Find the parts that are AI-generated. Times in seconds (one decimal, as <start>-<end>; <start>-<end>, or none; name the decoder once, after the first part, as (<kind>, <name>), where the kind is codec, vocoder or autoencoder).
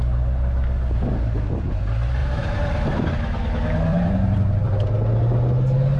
2.2-3.1 (vocoder, BigVGAN v2); 3.9-4.9